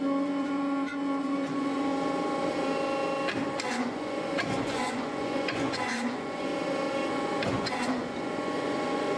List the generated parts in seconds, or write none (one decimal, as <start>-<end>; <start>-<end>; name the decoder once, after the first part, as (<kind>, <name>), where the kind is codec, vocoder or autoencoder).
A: 0.0-1.9 (vocoder, Vocos); 3.7-6.5; 7.1-9.2